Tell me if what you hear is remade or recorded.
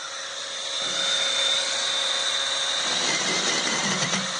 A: recorded